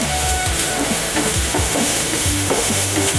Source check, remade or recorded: remade